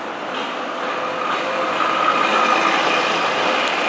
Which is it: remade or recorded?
recorded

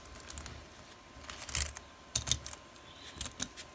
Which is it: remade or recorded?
recorded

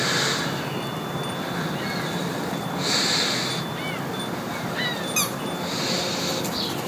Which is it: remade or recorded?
recorded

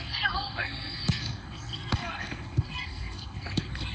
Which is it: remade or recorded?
remade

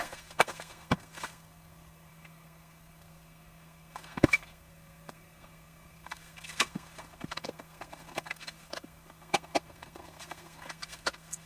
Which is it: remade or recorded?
remade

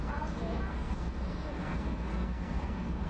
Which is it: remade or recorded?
remade